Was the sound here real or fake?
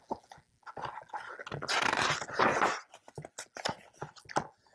real